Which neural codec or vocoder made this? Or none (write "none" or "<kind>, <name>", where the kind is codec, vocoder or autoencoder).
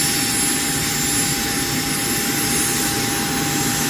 none